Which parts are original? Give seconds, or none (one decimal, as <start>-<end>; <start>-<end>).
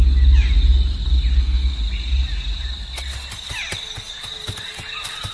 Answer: 0.0-1.4; 1.8-5.3